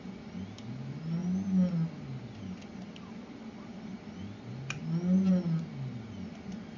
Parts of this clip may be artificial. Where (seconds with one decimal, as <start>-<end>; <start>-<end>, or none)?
none